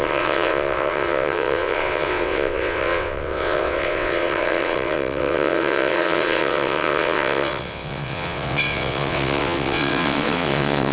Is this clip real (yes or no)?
no